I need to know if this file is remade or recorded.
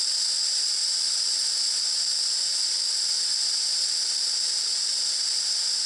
recorded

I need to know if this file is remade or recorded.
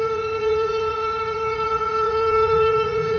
remade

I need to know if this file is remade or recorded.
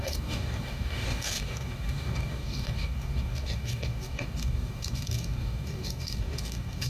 remade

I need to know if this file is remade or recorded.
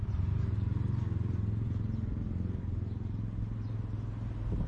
recorded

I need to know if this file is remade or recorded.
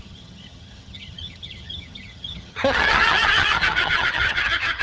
remade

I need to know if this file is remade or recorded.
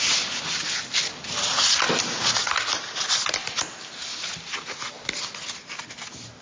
recorded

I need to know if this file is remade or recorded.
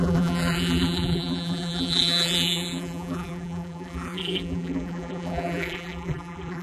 remade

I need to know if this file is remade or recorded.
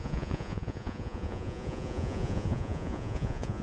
remade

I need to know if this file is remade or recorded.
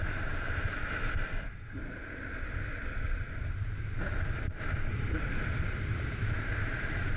recorded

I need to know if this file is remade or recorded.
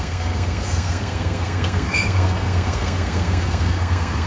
remade